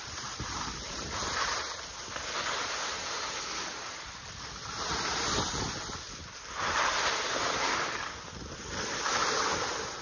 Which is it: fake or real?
real